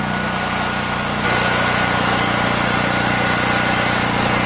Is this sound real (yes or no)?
yes